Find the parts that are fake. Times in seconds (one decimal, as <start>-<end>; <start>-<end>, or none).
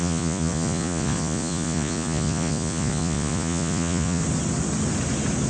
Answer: 0.0-4.2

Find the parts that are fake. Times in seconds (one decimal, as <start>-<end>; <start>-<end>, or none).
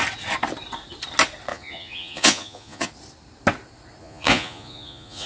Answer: 1.5-2.9; 4.0-5.3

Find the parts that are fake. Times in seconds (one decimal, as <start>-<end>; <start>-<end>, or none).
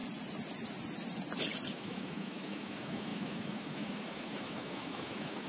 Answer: 1.7-5.5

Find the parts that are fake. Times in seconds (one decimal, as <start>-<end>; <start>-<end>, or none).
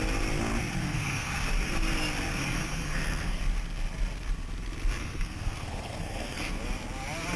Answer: 0.8-1.3; 2.4-3.4; 5.0-6.6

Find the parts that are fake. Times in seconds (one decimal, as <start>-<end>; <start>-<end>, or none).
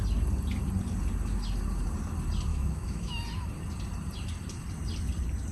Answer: 2.5-3.2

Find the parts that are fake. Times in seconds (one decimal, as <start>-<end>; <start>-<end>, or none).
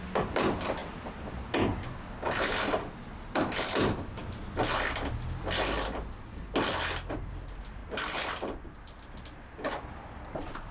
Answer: none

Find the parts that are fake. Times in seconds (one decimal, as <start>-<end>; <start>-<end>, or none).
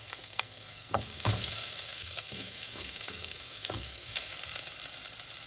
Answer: 0.0-4.3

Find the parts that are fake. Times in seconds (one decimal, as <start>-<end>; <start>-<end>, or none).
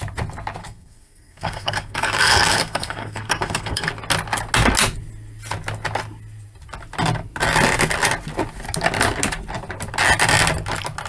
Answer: 0.6-3.9